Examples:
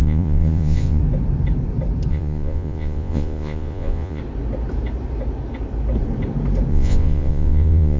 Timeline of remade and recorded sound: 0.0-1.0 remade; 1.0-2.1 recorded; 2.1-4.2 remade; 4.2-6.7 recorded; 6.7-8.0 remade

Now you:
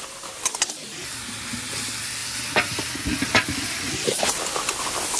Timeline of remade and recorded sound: 0.0-5.2 recorded

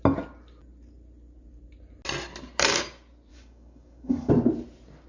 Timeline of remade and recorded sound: 0.0-3.3 recorded; 3.3-4.3 remade; 4.3-5.1 recorded

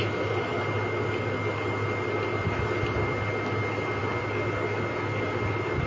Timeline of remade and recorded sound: 0.0-5.9 recorded

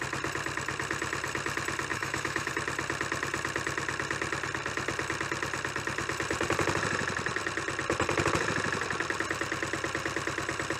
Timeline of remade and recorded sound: 0.0-1.9 recorded; 1.9-2.5 remade; 2.5-10.8 recorded

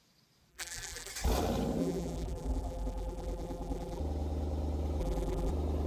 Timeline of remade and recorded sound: 0.0-0.5 recorded; 0.5-1.1 remade; 1.1-1.8 recorded; 1.8-4.0 remade; 4.0-5.0 recorded; 5.0-5.5 remade; 5.5-5.9 recorded